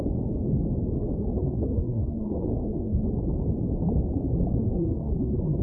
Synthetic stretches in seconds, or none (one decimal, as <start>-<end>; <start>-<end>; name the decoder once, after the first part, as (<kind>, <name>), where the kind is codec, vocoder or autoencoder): 1.2-3.1 (codec, SNAC); 4.6-5.6